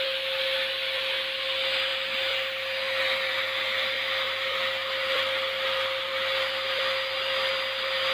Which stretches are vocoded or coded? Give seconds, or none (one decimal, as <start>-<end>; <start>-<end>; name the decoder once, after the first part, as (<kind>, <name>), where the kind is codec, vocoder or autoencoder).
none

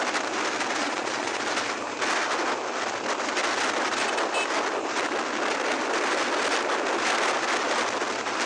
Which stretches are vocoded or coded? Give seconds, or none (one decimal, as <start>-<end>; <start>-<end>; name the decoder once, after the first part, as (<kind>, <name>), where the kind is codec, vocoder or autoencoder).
0.8-1.4 (vocoder, Vocos)

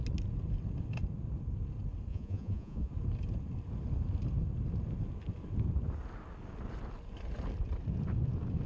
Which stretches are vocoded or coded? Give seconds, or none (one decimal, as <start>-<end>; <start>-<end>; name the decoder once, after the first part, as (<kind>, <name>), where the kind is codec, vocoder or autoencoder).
2.1-2.9 (vocoder, Vocos)

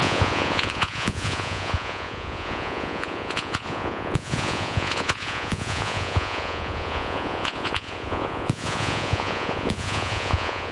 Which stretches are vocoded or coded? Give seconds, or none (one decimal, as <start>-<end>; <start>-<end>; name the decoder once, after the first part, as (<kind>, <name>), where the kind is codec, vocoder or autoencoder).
0.0-10.7 (vocoder, Vocos)